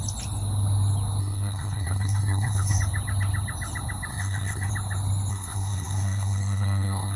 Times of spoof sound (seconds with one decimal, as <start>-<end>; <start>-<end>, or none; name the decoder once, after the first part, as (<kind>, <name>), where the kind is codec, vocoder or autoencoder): 1.2-2.8 (codec, SNAC); 4.1-4.7; 5.3-7.2